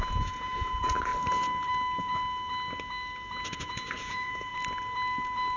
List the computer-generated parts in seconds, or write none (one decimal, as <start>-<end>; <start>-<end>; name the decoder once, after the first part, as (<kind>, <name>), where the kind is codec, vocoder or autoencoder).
0.0-1.1 (vocoder, Vocos); 3.4-4.5